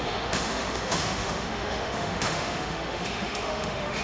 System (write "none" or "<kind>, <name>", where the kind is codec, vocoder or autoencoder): autoencoder, DAC-VAE